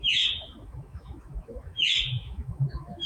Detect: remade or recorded remade